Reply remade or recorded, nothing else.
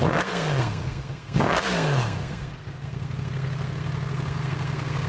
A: remade